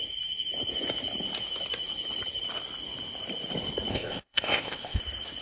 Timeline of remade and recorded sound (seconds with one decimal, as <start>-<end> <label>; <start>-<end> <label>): 0.0-3.9 recorded; 3.9-5.0 remade; 5.0-5.4 recorded